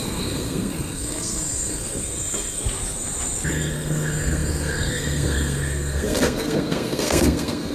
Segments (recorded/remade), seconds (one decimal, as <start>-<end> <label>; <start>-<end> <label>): 0.0-2.6 remade; 2.6-3.5 recorded; 3.5-7.7 remade

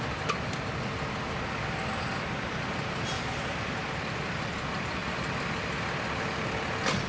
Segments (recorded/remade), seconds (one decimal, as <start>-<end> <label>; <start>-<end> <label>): 0.0-7.1 recorded

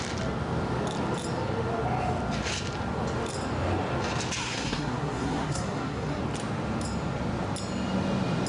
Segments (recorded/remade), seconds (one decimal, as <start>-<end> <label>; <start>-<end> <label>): 0.0-4.4 recorded; 4.4-6.2 remade; 6.2-8.5 recorded

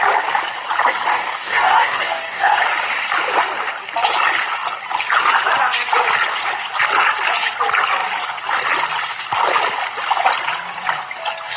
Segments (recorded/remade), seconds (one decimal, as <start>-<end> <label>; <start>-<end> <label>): 0.0-1.1 recorded; 1.1-2.6 remade; 2.6-11.6 recorded

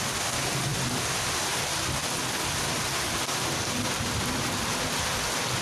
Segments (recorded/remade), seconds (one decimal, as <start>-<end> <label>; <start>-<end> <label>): 0.0-5.6 recorded